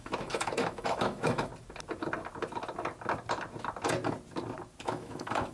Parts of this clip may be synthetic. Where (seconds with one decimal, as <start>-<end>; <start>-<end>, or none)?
0.0-1.5; 4.8-5.5